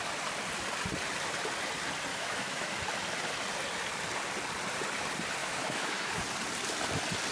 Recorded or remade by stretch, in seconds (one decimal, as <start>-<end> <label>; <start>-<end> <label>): 0.0-2.1 recorded; 2.1-2.7 remade; 2.7-5.4 recorded; 5.4-6.2 remade; 6.2-7.3 recorded